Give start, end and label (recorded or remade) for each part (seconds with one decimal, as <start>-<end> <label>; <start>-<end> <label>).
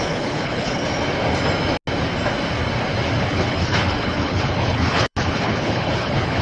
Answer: 0.0-0.8 remade; 0.8-3.2 recorded; 3.2-6.4 remade